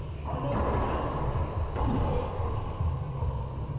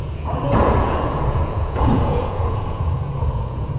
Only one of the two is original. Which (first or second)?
first